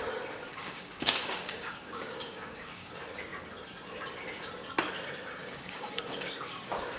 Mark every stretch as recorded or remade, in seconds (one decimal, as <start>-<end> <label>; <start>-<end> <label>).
0.0-0.5 recorded; 0.5-2.9 remade; 2.9-5.4 recorded; 5.4-6.3 remade; 6.3-7.0 recorded